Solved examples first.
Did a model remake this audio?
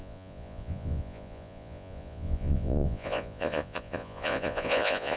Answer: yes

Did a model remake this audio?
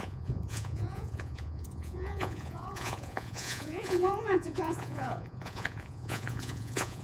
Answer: yes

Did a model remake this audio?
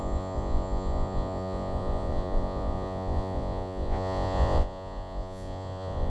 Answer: yes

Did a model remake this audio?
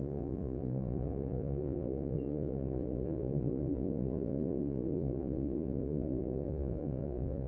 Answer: yes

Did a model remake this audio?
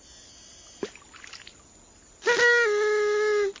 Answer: no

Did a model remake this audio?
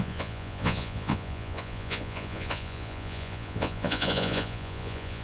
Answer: yes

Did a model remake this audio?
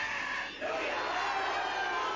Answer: no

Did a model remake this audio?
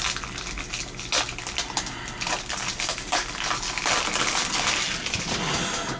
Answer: no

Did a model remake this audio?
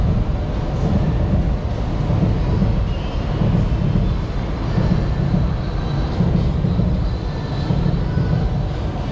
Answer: no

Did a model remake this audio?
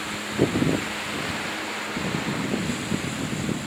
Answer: no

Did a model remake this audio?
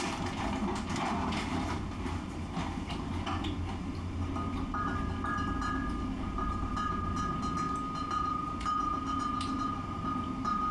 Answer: no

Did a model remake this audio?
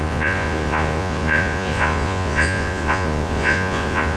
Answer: yes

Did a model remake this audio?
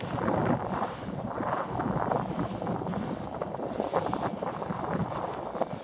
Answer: no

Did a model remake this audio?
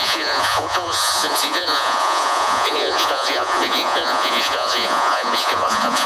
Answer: yes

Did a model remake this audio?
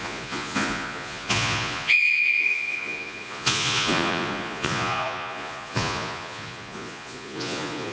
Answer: yes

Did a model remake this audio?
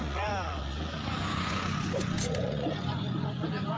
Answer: yes